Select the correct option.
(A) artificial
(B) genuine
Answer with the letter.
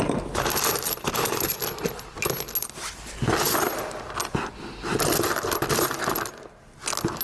B